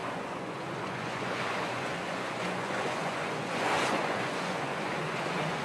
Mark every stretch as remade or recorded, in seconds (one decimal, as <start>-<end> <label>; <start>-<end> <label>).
0.0-5.6 remade